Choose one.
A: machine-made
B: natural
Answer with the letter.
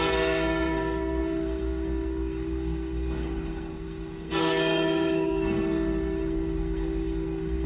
A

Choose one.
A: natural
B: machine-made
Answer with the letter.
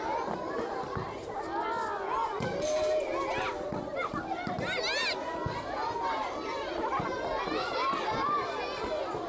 A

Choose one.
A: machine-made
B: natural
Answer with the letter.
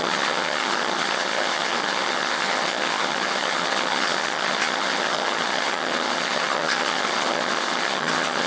A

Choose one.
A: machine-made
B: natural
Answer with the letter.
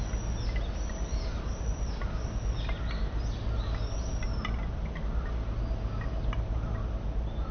B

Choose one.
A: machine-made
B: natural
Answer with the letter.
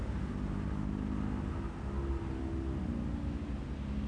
B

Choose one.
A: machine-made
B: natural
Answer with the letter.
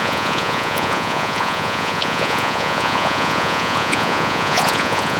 A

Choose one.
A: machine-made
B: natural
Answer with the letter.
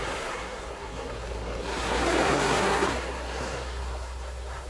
A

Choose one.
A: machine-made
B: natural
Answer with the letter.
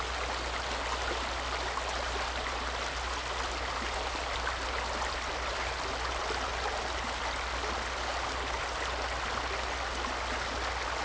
B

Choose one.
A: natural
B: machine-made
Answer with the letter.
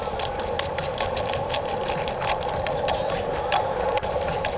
A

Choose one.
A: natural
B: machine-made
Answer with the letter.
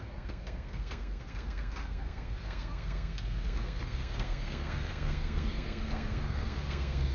B